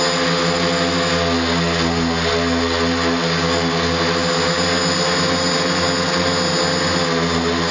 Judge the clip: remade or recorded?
recorded